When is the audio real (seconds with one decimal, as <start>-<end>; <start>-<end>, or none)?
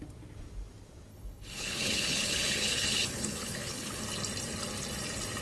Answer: 0.0-1.1; 4.0-5.4